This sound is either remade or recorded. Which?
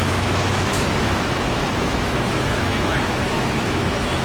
remade